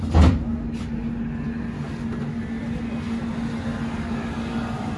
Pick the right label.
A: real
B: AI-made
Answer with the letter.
A